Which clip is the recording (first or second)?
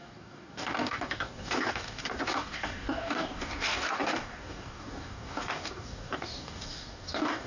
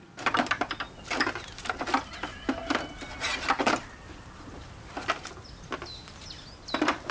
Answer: second